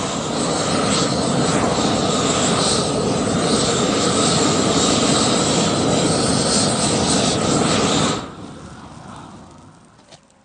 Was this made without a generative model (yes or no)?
yes